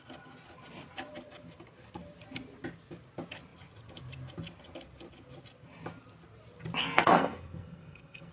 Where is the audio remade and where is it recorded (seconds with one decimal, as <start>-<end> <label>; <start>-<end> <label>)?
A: 0.0-6.8 recorded; 6.8-8.3 remade